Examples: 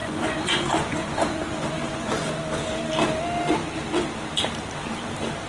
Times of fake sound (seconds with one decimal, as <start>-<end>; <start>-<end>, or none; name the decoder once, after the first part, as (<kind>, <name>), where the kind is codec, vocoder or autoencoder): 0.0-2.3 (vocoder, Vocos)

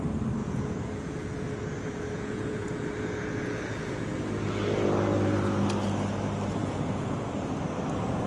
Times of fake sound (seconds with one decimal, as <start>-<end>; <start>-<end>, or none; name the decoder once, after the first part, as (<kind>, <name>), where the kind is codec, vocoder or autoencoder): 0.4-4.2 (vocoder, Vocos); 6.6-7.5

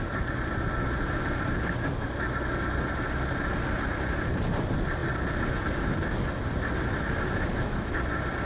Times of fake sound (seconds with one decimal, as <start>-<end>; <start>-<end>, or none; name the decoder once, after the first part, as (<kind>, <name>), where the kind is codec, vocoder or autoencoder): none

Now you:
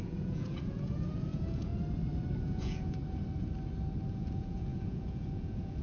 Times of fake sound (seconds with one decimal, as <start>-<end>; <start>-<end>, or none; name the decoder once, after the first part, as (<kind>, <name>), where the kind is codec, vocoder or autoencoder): 0.0-1.7 (vocoder, Vocos); 2.4-3.0; 4.1-5.8

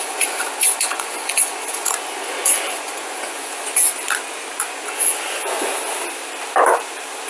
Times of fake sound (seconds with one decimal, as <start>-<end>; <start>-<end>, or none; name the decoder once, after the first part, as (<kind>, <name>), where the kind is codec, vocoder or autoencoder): 0.0-3.9 (vocoder, Vocos); 4.6-5.7

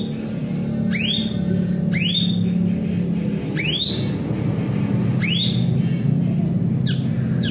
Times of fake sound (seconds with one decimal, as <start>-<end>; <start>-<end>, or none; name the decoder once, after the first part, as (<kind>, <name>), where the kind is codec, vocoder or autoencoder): none